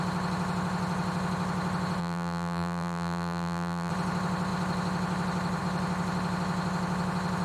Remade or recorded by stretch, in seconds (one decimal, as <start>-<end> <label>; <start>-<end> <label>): 0.0-2.0 recorded; 2.0-3.9 remade; 3.9-7.4 recorded